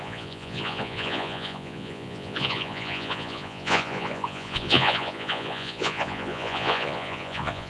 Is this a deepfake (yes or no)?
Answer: yes